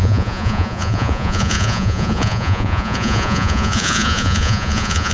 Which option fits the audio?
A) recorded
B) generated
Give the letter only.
B